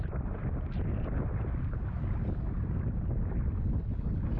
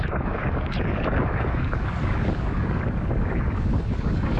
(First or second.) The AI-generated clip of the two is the second